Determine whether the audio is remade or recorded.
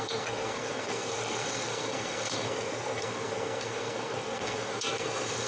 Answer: remade